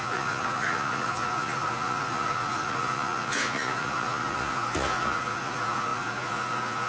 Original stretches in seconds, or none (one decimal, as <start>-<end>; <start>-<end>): none